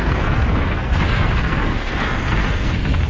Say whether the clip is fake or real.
fake